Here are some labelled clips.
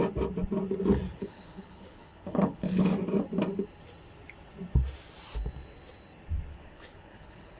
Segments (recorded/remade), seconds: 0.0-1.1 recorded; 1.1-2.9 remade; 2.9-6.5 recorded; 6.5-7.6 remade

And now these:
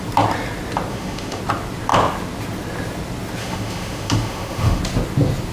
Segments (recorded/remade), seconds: 0.0-0.9 recorded; 0.9-1.4 remade; 1.4-3.4 recorded; 3.4-4.8 remade; 4.8-5.5 recorded

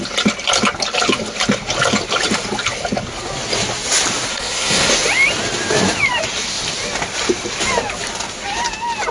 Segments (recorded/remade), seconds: 0.0-4.3 recorded; 4.3-4.9 remade; 4.9-9.1 recorded

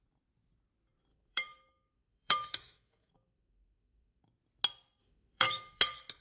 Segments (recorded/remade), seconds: 0.0-1.1 recorded; 1.1-4.2 remade; 4.2-5.0 recorded; 5.0-5.8 remade; 5.8-6.2 recorded

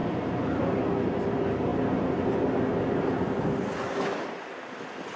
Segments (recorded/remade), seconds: 0.0-5.2 recorded

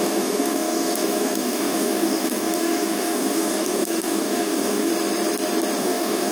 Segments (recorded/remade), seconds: 0.0-4.9 remade; 4.9-5.8 recorded; 5.8-6.3 remade